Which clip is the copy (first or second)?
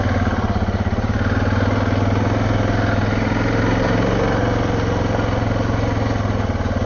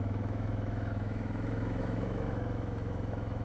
second